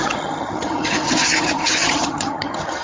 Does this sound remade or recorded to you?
remade